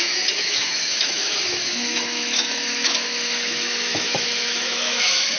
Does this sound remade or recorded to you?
remade